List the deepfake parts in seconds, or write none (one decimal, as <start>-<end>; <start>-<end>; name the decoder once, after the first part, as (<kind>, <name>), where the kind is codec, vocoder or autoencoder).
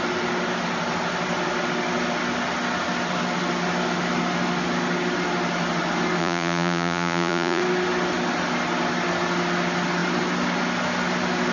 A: 6.2-7.6 (vocoder, Vocos)